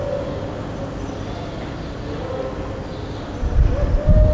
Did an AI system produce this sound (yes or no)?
no